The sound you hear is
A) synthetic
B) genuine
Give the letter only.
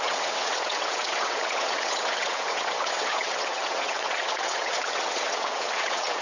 A